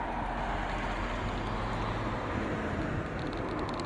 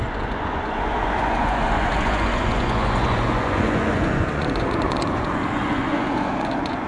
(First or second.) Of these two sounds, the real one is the first